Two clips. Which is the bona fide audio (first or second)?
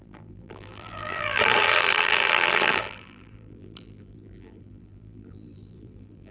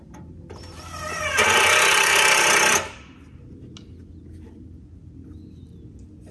second